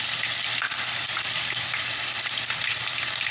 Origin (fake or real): real